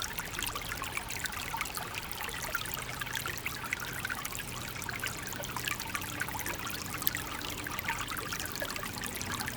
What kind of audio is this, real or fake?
real